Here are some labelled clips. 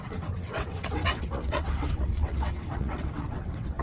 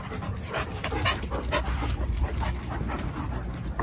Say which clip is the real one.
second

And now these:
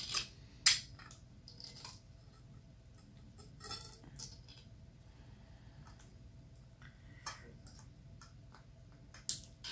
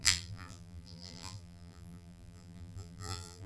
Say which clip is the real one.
first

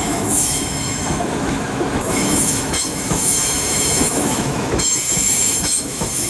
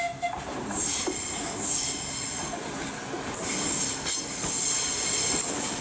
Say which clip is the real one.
second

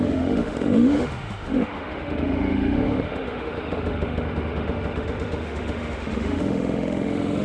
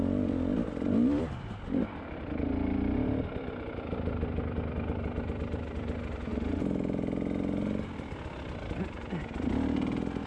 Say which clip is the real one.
second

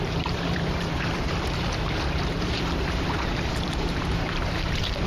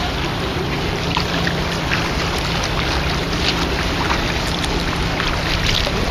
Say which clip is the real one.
second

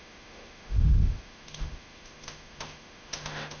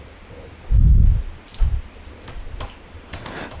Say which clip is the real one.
second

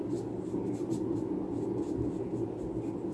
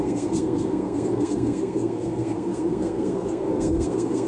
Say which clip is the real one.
first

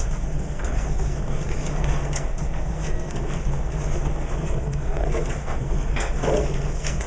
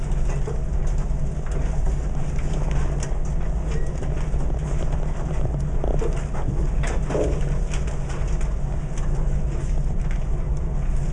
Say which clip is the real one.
second